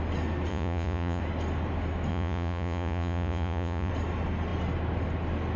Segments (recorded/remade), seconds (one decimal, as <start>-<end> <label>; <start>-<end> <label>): 0.0-0.5 recorded; 0.5-1.2 remade; 1.2-2.1 recorded; 2.1-3.9 remade; 3.9-5.6 recorded